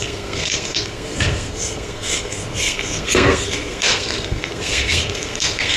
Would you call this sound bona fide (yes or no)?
no